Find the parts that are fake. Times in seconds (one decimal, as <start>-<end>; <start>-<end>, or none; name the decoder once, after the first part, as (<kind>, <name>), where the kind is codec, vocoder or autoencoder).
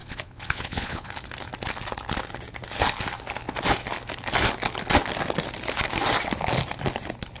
0.0-1.1 (vocoder, Vocos)